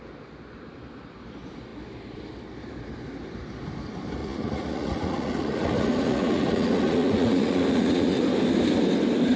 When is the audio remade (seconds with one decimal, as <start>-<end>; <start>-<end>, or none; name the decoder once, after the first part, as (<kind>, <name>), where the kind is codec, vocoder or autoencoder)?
4.2-8.2 (vocoder, Vocos)